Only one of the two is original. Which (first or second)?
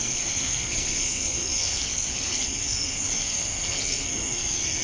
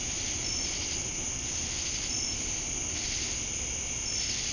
second